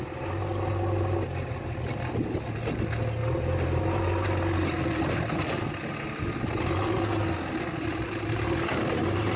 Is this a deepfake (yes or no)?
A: no